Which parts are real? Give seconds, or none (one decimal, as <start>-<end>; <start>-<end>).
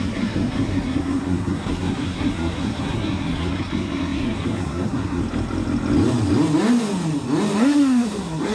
5.2-7.6